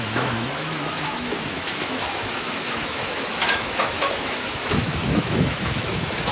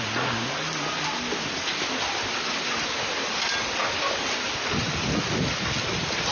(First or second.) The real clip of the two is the second